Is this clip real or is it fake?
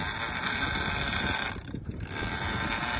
real